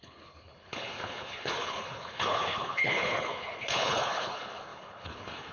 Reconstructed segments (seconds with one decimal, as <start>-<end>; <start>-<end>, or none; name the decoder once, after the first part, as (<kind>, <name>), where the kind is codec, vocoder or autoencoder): 0.0-5.5 (codec, HILCodec)